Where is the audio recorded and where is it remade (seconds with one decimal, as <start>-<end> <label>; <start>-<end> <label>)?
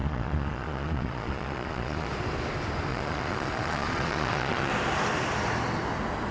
0.0-2.1 remade; 2.1-2.9 recorded; 2.9-4.7 remade; 4.7-6.3 recorded